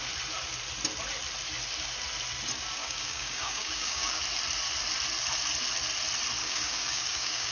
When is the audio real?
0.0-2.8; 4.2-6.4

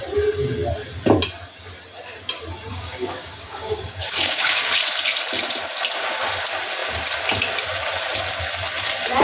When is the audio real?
0.0-2.7; 4.8-9.2

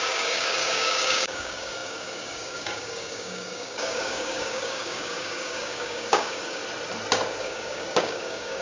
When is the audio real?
6.6-7.4

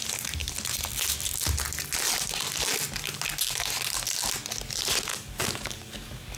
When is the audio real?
0.0-5.1